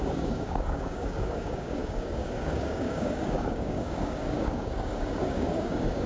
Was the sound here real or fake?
fake